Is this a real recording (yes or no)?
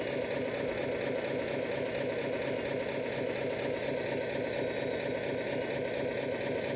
yes